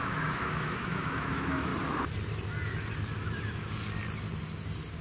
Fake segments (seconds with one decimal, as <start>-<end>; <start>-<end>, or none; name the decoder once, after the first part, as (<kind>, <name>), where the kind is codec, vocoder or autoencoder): 0.0-1.7 (autoencoder, DAC-VAE)